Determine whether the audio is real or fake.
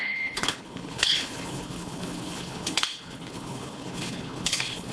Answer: fake